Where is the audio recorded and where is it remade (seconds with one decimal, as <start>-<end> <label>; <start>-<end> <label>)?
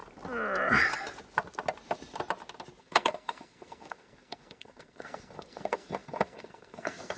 0.0-2.8 recorded; 2.8-7.2 remade